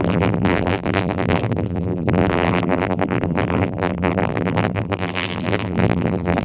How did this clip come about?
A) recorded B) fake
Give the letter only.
B